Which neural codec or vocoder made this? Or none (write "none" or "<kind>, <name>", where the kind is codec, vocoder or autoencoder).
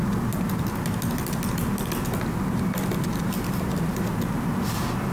none